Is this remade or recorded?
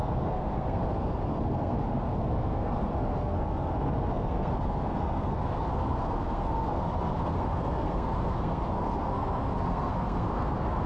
remade